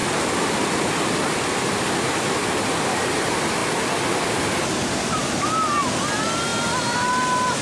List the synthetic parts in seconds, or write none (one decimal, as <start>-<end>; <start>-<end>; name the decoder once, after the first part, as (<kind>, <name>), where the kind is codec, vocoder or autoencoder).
none